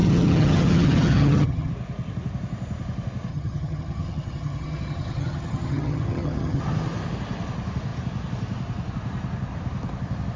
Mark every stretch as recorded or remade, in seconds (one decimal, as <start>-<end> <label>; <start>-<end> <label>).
0.0-1.7 remade; 1.7-3.3 recorded; 3.3-6.6 remade; 6.6-10.4 recorded

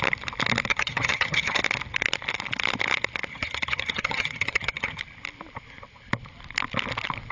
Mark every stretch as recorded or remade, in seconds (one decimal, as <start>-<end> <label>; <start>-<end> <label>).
0.0-0.7 recorded; 0.7-1.6 remade; 1.6-3.3 recorded; 3.3-5.0 remade; 5.0-7.3 recorded

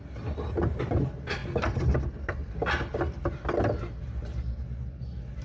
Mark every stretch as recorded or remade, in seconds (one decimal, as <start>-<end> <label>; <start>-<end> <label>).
0.0-5.4 recorded

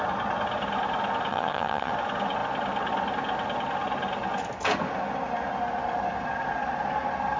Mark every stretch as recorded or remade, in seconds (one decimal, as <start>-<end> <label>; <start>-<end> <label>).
0.0-1.3 recorded; 1.3-1.9 remade; 1.9-7.4 recorded

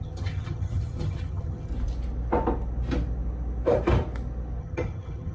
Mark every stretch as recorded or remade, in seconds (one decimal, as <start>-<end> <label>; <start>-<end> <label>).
0.0-1.7 remade; 1.7-4.6 recorded; 4.6-5.3 remade

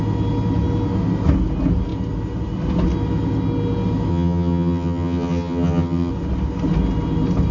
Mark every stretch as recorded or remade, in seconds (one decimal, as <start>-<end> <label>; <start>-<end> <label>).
0.0-4.1 recorded; 4.1-6.1 remade; 6.1-7.5 recorded

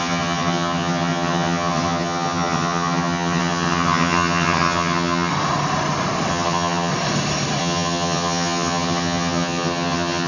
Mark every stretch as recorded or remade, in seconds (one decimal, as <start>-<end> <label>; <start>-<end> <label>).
0.0-5.3 remade; 5.3-6.3 recorded; 6.3-6.9 remade; 6.9-7.6 recorded; 7.6-10.3 remade

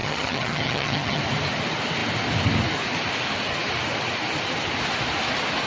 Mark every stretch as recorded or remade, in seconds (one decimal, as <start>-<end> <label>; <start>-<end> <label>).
0.0-1.2 remade; 1.2-5.7 recorded